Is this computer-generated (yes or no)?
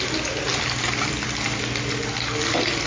no